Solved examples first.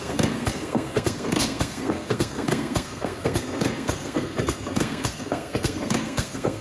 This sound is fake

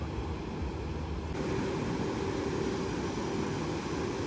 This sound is real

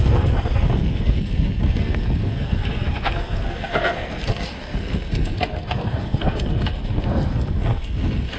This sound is fake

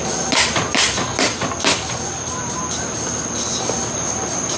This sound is real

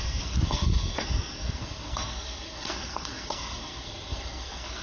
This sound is fake